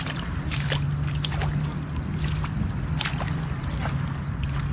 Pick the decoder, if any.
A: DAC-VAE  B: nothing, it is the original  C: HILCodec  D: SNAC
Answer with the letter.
B